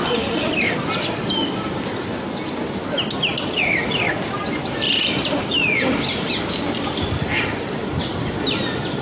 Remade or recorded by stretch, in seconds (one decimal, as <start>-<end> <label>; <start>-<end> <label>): 0.0-3.3 recorded; 3.3-4.1 remade; 4.1-4.6 recorded; 4.6-7.8 remade; 7.8-9.0 recorded